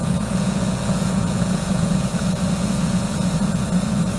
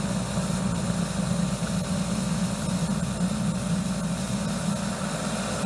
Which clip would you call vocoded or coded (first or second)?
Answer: first